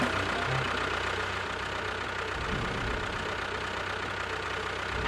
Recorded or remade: recorded